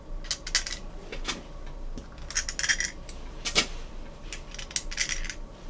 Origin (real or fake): real